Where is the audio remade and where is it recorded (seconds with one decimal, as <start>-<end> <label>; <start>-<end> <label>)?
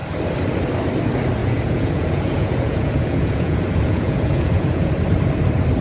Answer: 0.0-1.4 recorded; 1.4-4.9 remade; 4.9-5.8 recorded